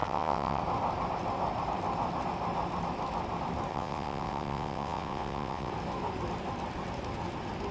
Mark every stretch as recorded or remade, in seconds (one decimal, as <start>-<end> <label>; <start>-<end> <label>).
0.0-0.6 remade; 0.6-3.7 recorded; 3.7-5.7 remade; 5.7-7.7 recorded

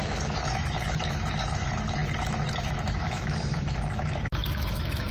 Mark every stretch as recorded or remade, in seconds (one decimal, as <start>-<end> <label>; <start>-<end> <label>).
0.0-5.1 remade

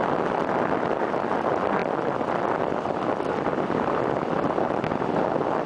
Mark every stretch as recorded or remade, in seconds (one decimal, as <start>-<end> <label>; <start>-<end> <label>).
0.0-5.7 recorded

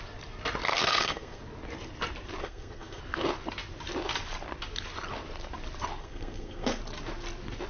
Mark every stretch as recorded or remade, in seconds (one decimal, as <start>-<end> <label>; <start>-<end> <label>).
0.0-0.7 recorded; 0.7-1.4 remade; 1.4-2.4 recorded; 2.4-3.0 remade; 3.0-6.0 recorded; 6.0-6.8 remade; 6.8-7.7 recorded

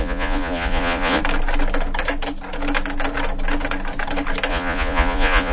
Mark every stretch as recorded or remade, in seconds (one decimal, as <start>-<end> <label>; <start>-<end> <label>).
0.0-1.2 remade; 1.2-4.5 recorded; 4.5-5.5 remade

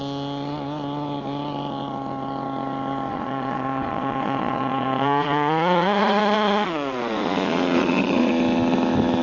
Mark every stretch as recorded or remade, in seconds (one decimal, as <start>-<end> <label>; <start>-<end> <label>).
0.0-3.1 recorded; 3.1-8.3 remade; 8.3-9.2 recorded